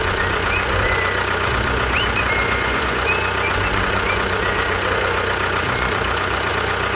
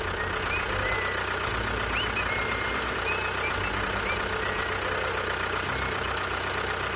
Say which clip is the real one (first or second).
second